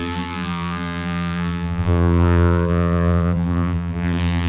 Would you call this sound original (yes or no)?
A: no